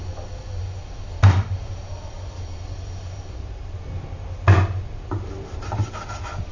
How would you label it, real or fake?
real